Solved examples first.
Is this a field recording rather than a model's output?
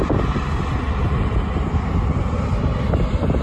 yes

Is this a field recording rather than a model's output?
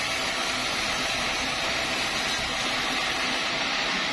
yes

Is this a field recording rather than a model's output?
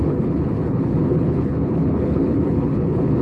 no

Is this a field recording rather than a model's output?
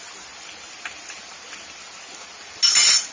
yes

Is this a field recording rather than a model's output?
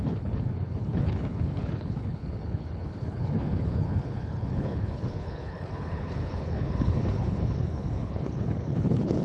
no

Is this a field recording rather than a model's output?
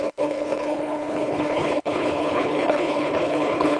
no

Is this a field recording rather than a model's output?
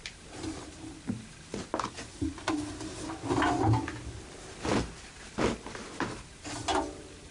yes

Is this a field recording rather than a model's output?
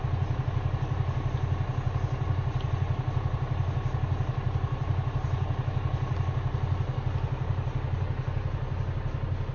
yes